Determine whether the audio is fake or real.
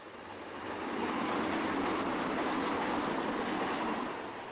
real